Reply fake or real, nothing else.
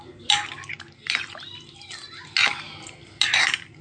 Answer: real